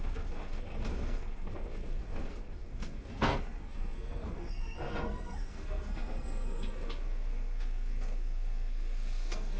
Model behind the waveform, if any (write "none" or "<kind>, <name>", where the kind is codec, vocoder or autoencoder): codec, SNAC